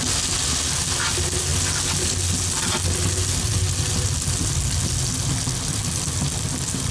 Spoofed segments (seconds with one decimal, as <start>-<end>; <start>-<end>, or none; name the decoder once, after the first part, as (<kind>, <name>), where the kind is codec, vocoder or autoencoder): none